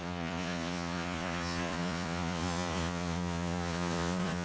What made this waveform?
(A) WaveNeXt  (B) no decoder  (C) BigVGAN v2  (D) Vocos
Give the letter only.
D